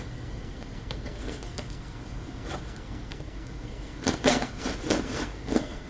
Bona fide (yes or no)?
no